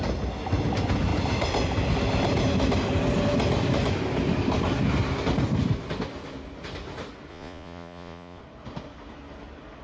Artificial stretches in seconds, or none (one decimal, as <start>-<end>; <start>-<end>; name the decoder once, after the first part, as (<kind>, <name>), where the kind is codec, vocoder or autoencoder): 7.3-8.4 (vocoder, Vocos)